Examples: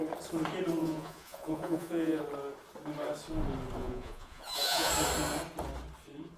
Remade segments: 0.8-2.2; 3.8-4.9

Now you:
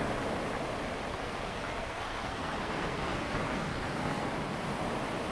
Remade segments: 1.1-4.3

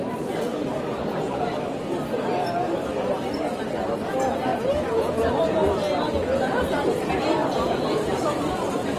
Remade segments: 0.5-1.4; 7.4-8.2